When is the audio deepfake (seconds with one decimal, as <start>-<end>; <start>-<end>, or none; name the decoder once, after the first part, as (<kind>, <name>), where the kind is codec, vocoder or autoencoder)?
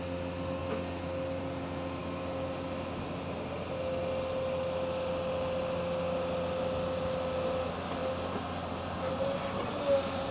none